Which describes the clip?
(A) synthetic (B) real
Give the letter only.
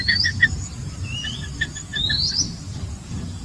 B